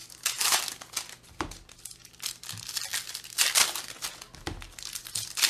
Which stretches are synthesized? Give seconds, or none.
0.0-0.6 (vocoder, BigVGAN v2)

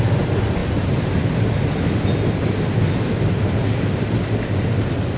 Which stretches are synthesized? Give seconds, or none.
0.6-1.6 (vocoder, BigVGAN v2)

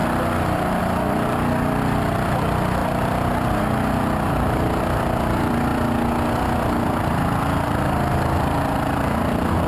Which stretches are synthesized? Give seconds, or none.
0.8-5.7 (vocoder, BigVGAN v2); 7.0-9.7

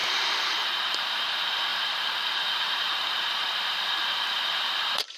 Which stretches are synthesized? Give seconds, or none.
0.0-5.2 (vocoder, BigVGAN v2)